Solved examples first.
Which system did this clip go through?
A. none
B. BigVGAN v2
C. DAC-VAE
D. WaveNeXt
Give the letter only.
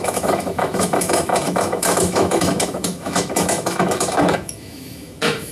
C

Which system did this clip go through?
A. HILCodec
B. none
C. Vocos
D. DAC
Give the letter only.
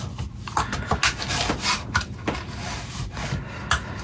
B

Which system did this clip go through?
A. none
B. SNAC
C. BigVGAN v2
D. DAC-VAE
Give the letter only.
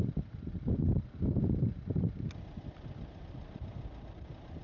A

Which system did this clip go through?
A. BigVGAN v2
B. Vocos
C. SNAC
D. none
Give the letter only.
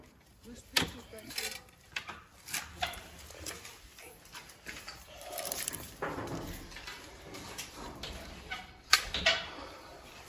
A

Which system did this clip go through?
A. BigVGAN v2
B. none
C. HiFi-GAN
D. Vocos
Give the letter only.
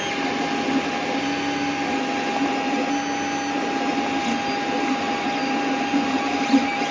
B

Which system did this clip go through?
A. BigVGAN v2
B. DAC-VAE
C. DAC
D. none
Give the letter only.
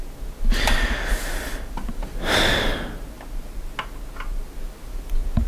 D